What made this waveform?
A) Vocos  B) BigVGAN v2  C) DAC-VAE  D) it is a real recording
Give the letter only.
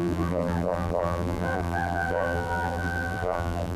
B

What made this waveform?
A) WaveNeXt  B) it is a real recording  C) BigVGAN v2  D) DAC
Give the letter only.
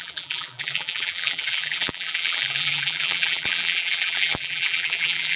C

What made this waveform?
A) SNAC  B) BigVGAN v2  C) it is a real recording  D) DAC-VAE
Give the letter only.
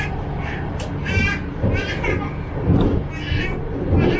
C